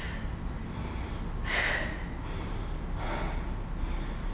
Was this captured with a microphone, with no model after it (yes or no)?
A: yes